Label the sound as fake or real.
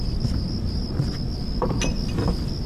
real